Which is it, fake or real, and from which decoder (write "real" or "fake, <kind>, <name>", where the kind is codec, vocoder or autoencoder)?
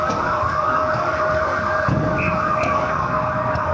fake, codec, DAC